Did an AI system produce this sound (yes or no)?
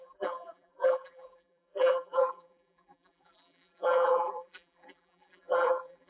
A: yes